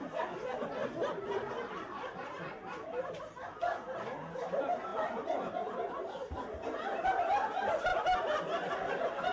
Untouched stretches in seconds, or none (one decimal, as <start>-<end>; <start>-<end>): 0.0-0.8; 3.7-9.3